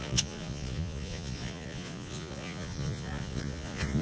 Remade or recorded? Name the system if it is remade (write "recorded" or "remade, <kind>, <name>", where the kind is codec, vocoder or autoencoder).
remade, vocoder, Vocos